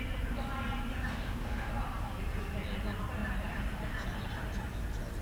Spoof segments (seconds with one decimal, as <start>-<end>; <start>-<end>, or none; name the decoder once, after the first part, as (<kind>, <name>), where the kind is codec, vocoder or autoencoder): 1.1-1.7 (autoencoder, DAC-VAE)